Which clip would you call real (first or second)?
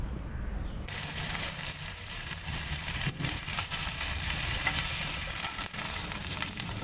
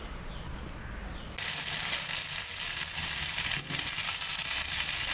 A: second